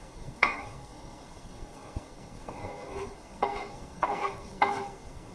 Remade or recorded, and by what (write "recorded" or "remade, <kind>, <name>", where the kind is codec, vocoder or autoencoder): remade, codec, SNAC